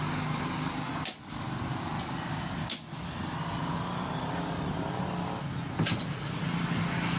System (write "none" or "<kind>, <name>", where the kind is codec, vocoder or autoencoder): none